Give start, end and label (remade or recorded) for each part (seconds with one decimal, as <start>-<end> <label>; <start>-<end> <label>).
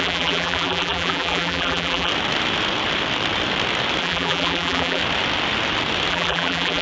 0.0-2.1 remade; 2.1-4.0 recorded; 4.0-5.0 remade; 5.0-6.1 recorded; 6.1-6.8 remade